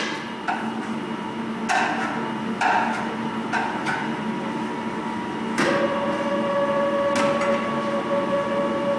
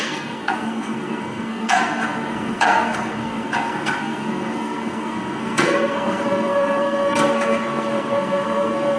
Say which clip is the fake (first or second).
second